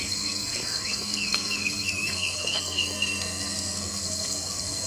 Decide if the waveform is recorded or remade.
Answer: remade